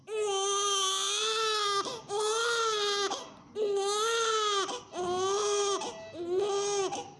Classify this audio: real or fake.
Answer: real